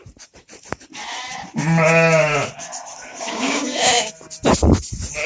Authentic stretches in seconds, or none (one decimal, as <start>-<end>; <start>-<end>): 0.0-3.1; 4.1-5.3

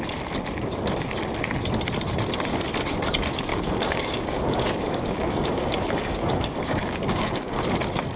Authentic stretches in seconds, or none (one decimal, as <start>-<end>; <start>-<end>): 0.0-3.5; 7.6-8.2

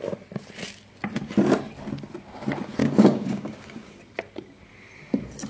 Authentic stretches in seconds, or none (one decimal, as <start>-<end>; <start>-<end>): 0.0-2.8; 4.0-5.5

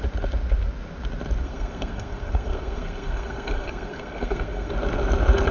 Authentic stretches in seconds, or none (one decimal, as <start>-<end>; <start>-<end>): 0.0-1.4; 4.7-5.5

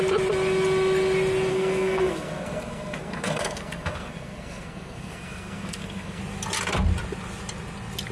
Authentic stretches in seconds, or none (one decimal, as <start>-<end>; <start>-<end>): 0.0-1.5; 6.2-8.1

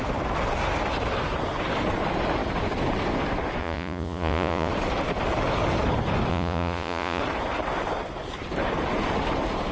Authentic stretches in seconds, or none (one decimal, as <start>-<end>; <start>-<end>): 0.0-3.6; 4.7-6.3; 7.2-9.7

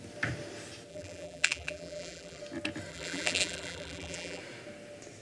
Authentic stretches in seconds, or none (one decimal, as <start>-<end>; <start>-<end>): 0.0-0.9; 2.4-2.9; 4.4-5.2